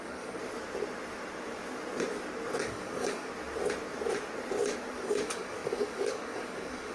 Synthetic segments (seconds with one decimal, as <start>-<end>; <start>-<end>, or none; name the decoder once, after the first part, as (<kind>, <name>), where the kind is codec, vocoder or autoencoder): 0.0-0.4 (codec, DAC); 2.6-3.3; 5.0-6.9